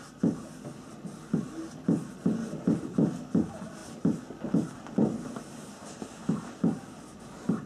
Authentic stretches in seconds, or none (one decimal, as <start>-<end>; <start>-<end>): 0.0-7.7